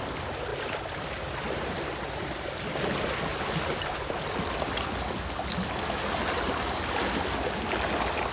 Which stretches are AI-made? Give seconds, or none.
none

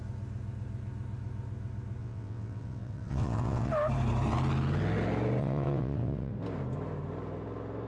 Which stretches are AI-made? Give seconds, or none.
2.0-3.7 (vocoder, WaveNeXt); 5.4-6.3